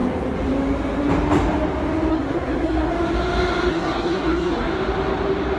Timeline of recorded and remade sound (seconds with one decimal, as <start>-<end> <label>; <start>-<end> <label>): 0.0-2.1 recorded; 2.1-2.9 remade; 2.9-3.7 recorded; 3.7-4.7 remade; 4.7-5.6 recorded